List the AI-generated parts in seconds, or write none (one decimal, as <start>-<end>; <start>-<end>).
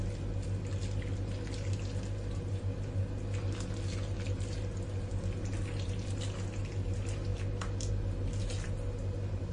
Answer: none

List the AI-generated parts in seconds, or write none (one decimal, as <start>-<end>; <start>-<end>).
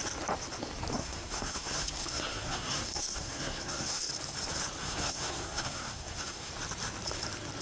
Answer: 1.0-4.1; 4.8-6.5